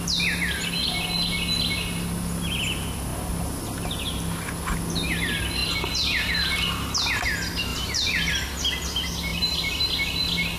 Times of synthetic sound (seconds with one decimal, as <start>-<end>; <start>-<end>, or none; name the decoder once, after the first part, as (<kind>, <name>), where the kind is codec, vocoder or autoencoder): 5.6-7.1 (vocoder, BigVGAN v2); 7.7-8.3; 9.3-9.9